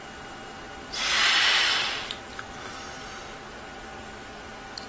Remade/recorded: recorded